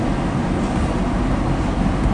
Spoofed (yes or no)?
no